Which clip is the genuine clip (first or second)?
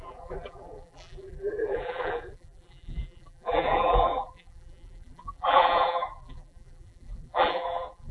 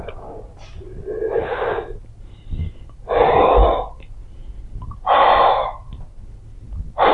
second